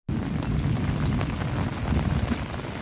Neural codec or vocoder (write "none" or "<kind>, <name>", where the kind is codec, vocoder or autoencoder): none